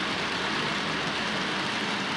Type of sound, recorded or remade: recorded